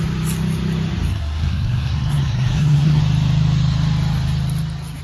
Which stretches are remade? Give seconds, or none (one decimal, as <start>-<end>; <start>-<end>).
1.1-3.0